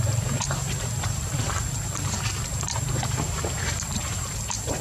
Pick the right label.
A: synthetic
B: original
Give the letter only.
A